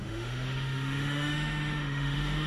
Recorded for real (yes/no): no